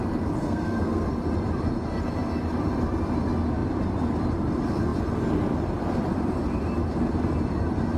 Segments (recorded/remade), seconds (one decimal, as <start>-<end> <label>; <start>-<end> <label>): 0.0-0.4 recorded; 0.4-1.1 remade; 1.1-8.0 recorded